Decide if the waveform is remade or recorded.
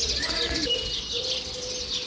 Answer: recorded